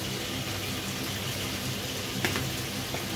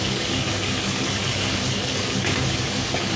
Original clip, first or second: first